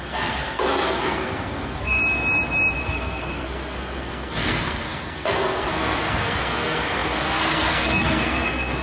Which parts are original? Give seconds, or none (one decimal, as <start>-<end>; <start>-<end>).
2.0-2.8